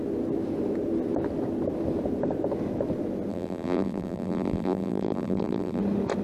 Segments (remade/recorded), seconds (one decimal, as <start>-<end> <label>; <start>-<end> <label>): 0.0-3.3 recorded; 3.3-5.8 remade; 5.8-6.2 recorded